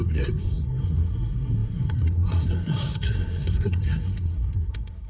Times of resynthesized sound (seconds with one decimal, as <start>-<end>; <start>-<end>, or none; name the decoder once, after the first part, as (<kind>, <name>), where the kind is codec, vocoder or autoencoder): 0.0-5.1 (codec, SNAC)